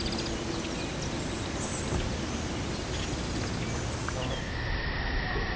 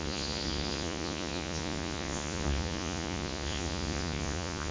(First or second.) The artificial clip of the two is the second